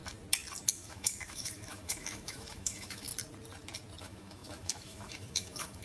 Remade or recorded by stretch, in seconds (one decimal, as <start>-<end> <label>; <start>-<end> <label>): 0.0-0.7 recorded; 0.7-3.1 remade; 3.1-4.0 recorded; 4.0-5.8 remade